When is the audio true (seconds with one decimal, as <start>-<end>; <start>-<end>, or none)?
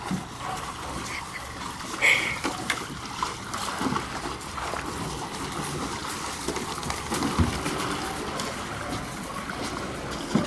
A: 0.0-10.5